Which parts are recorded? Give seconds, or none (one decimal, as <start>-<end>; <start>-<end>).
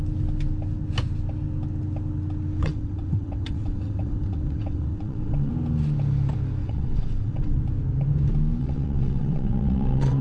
0.0-2.6; 5.5-6.6; 7.6-8.6